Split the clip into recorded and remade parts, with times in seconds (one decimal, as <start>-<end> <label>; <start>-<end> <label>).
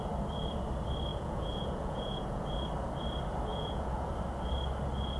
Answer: 0.0-1.1 recorded; 1.1-2.4 remade; 2.4-3.5 recorded; 3.5-4.1 remade; 4.1-5.2 recorded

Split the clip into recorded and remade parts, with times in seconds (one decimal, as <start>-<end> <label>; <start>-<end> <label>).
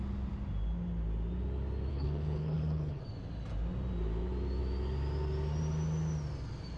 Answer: 0.0-1.9 recorded; 1.9-3.0 remade; 3.0-6.8 recorded